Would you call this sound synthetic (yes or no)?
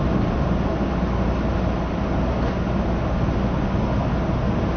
no